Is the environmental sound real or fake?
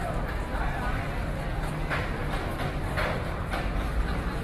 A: real